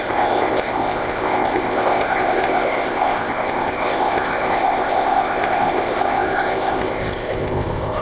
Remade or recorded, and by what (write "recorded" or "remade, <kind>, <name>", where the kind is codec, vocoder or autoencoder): remade, codec, ZipCodec